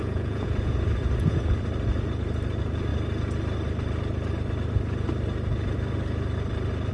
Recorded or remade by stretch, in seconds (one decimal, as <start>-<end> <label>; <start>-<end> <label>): 0.0-1.6 remade; 1.6-6.9 recorded

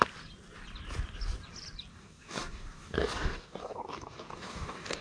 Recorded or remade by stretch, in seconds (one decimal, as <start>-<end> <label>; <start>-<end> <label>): 0.0-1.9 recorded; 1.9-5.0 remade

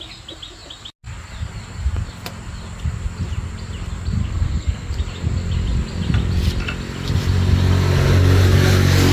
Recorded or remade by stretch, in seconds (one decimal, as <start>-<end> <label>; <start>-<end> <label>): 0.0-4.2 recorded; 4.2-4.9 remade; 4.9-9.1 recorded

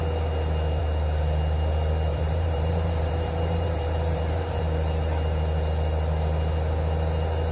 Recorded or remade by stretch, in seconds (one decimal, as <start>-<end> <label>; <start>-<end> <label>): 0.0-2.1 recorded; 2.1-4.6 remade; 4.6-7.5 recorded

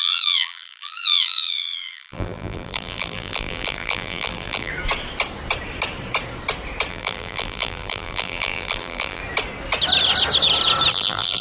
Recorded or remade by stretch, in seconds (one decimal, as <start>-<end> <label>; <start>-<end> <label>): 0.0-4.7 remade; 4.7-6.9 recorded; 6.9-9.2 remade; 9.2-10.9 recorded; 10.9-11.4 remade

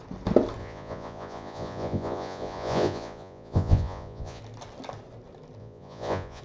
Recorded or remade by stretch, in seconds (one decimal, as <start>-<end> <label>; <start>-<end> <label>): 0.0-0.6 recorded; 0.6-4.4 remade; 4.4-5.6 recorded; 5.6-6.4 remade